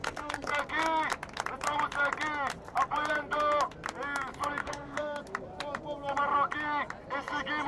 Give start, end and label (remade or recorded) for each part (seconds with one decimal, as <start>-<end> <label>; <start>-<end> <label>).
0.0-0.5 remade; 0.5-4.6 recorded; 4.6-5.2 remade; 5.2-7.7 recorded